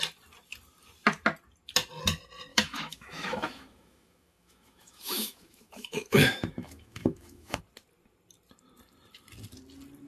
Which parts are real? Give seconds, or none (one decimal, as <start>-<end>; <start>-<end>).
0.0-2.5; 7.6-10.1